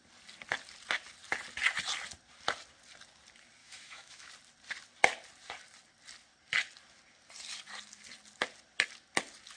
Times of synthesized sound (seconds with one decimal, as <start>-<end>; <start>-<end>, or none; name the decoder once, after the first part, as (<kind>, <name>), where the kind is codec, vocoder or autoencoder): 3.6-4.3 (autoencoder, DAC-VAE)